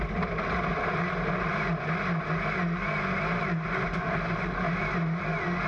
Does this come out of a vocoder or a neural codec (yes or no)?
no